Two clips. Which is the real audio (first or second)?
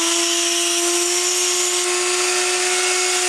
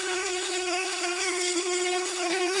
first